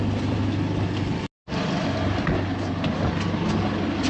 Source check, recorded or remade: recorded